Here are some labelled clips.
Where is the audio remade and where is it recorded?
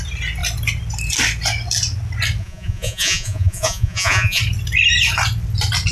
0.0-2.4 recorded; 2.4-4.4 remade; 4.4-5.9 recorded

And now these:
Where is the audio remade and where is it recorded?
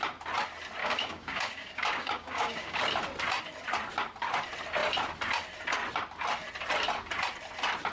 0.0-0.8 recorded; 0.8-2.8 remade; 2.8-7.9 recorded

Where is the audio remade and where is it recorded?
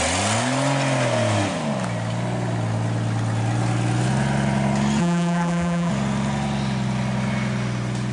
0.0-5.0 recorded; 5.0-5.9 remade; 5.9-8.1 recorded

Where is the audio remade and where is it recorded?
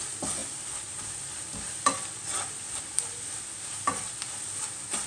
0.0-5.1 recorded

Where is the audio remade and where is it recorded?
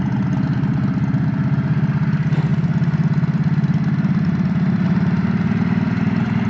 0.0-6.5 recorded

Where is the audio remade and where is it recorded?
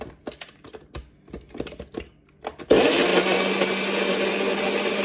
0.0-5.0 recorded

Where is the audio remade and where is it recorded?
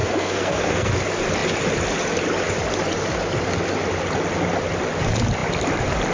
0.0-0.9 remade; 0.9-6.1 recorded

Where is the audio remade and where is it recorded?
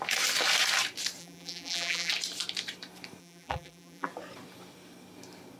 0.0-1.2 recorded; 1.2-2.1 remade; 2.1-3.2 recorded; 3.2-4.1 remade; 4.1-5.6 recorded